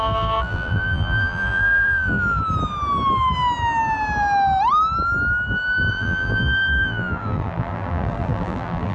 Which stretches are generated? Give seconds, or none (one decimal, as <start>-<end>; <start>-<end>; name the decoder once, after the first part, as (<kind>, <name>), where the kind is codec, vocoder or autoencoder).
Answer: 0.0-2.4 (vocoder, BigVGAN v2); 5.9-8.9